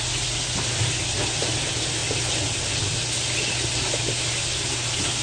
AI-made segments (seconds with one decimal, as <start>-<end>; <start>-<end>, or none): none